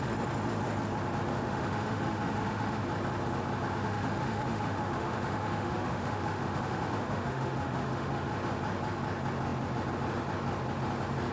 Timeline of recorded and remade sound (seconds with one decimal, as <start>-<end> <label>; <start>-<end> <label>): 0.0-1.3 recorded; 1.3-2.8 remade; 2.8-3.7 recorded; 3.7-8.3 remade; 8.3-11.3 recorded